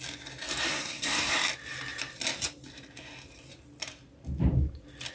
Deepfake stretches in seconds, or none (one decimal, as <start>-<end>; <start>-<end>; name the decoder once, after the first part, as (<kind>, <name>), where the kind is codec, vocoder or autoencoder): 0.7-1.3 (codec, SNAC)